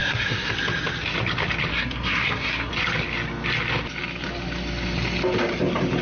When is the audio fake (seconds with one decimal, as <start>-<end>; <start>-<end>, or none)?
0.0-0.5; 1.7-2.7